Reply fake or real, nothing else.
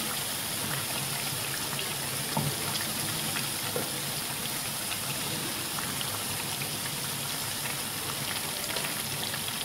fake